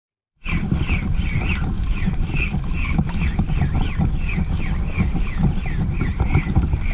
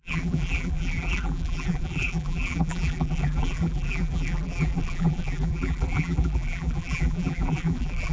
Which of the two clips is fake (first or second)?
second